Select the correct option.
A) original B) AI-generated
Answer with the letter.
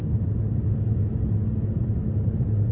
A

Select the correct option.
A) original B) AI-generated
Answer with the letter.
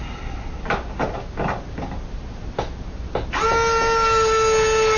A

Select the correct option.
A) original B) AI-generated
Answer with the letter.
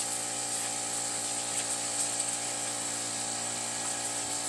A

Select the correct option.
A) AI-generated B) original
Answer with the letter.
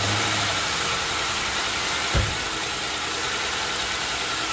B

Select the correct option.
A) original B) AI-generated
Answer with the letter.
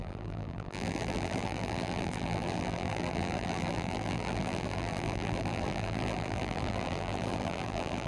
B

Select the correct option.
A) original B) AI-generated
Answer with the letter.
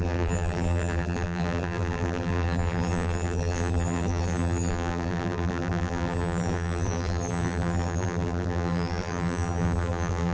B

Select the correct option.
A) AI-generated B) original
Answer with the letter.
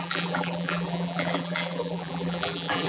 A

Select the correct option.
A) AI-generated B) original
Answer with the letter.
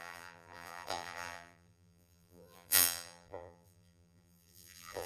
A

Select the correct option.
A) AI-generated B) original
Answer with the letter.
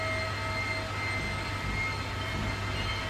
B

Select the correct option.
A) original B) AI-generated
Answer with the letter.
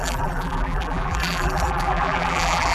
B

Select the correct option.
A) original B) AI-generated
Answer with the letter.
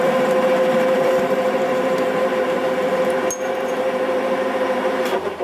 B